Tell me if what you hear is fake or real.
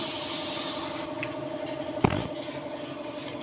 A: real